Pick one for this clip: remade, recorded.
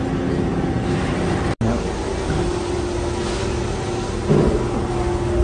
recorded